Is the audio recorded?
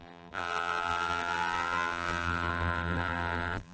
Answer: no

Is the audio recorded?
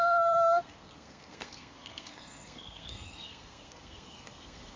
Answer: no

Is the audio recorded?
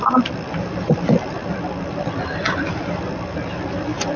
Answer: yes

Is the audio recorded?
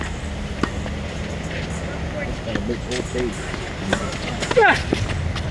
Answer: yes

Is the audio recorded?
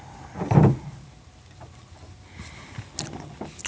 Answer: yes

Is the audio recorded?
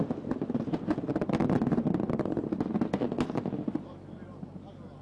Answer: yes